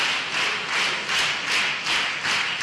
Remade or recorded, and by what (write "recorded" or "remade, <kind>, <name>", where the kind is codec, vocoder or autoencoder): recorded